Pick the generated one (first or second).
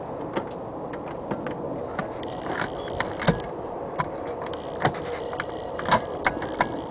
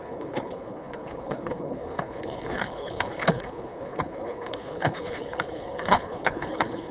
second